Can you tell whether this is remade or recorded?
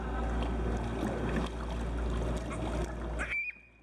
recorded